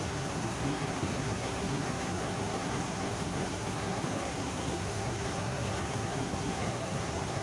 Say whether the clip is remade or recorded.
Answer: remade